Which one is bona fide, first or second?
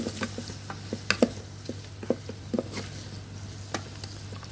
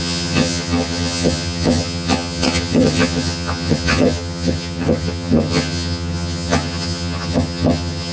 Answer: first